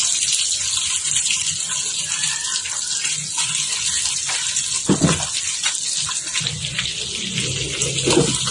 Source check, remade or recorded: recorded